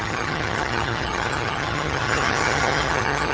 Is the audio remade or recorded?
remade